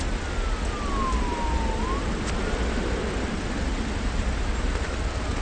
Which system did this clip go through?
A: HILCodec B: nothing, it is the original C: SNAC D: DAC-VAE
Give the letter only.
B